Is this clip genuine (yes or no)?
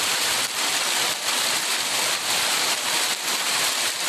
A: yes